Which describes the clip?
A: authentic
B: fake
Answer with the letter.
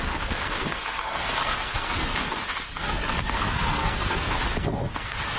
B